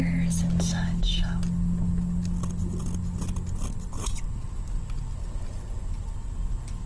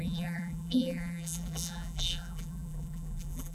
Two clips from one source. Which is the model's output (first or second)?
second